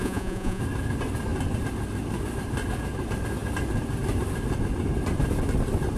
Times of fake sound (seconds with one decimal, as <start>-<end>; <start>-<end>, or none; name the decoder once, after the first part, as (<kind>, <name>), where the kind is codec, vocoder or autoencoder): 0.0-0.6 (vocoder, Vocos)